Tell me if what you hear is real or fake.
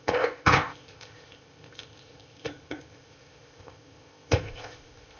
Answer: fake